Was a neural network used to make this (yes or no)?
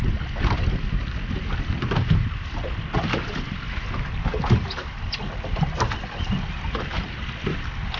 no